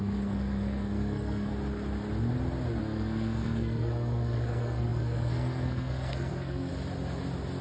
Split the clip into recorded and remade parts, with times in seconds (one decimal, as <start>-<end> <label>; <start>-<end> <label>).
0.0-1.5 remade; 1.5-2.8 recorded; 2.8-6.7 remade; 6.7-7.6 recorded